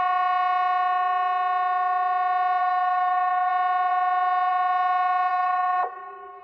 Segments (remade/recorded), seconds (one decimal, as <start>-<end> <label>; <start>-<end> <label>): 0.0-2.6 recorded; 2.6-3.5 remade; 3.5-5.3 recorded; 5.3-6.4 remade